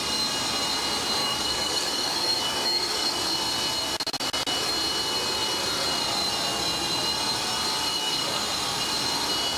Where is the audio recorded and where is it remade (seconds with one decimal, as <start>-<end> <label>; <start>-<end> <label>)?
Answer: 0.0-1.2 recorded; 1.2-3.2 remade; 3.2-7.9 recorded; 7.9-8.4 remade; 8.4-9.6 recorded